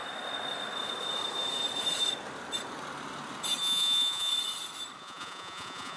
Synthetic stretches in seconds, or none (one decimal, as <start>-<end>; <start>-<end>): 3.6-4.3; 5.0-6.0